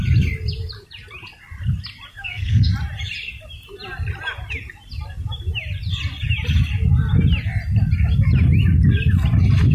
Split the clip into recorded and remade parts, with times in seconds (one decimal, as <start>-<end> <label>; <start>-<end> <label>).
0.0-2.1 recorded; 2.1-2.7 remade; 2.7-9.7 recorded